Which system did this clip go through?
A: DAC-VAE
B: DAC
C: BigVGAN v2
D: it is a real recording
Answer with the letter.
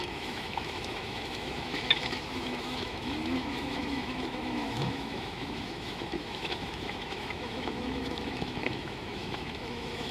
A